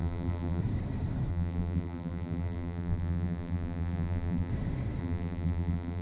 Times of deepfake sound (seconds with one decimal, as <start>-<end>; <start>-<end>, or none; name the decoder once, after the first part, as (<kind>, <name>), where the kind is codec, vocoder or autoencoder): 0.0-0.6 (vocoder, BigVGAN v2); 1.3-4.5; 5.0-6.0